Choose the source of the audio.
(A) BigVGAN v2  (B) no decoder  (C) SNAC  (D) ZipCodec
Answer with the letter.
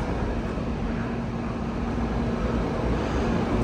B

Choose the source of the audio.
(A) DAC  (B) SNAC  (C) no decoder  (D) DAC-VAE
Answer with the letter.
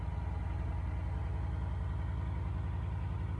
C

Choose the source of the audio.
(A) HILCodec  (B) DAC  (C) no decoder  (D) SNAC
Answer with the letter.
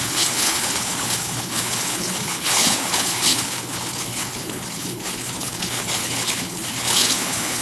A